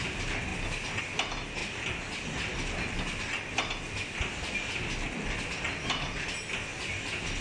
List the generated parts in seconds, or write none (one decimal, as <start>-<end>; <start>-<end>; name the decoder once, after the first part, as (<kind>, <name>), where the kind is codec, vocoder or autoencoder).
none